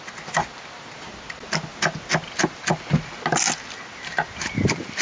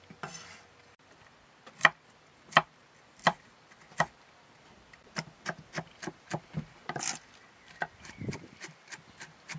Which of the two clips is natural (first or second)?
first